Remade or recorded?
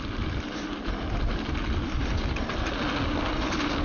recorded